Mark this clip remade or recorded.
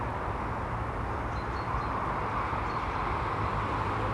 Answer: recorded